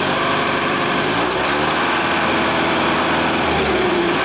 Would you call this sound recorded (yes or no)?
no